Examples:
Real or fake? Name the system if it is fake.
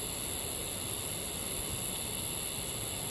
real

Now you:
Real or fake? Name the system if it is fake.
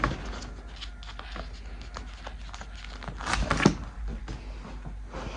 real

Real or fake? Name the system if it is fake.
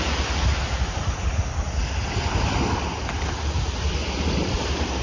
real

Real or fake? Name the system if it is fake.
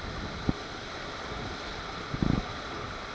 real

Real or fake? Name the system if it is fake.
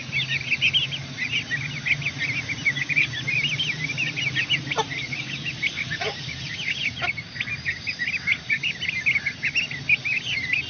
real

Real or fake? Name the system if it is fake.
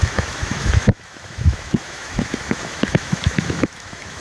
fake, autoencoder, DAC-VAE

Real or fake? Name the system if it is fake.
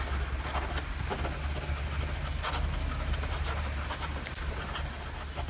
real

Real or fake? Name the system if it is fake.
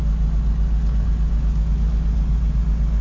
real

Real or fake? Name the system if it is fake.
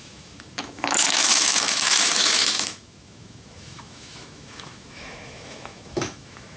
fake, autoencoder, DAC-VAE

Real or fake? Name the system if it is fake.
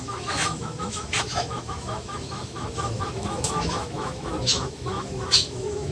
fake, autoencoder, DAC-VAE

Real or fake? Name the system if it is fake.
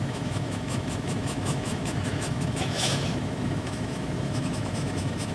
fake, autoencoder, DAC-VAE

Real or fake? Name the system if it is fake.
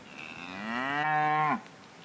real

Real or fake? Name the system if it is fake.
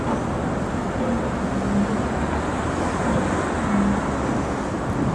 real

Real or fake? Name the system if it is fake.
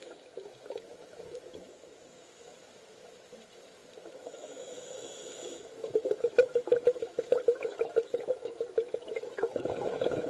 fake, autoencoder, DAC-VAE